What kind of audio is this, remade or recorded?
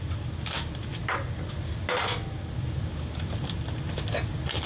recorded